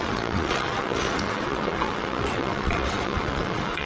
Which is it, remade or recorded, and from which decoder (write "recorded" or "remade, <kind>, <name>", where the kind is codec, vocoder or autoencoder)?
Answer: remade, vocoder, WaveNeXt